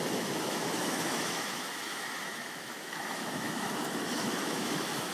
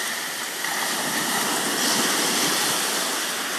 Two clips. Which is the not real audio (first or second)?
first